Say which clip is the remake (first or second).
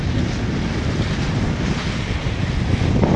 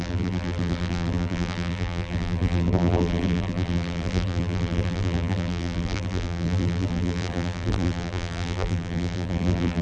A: second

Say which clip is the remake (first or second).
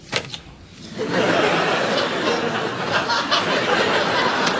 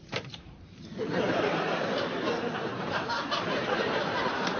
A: second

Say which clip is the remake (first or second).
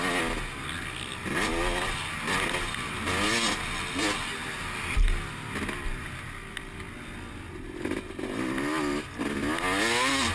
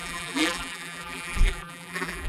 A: second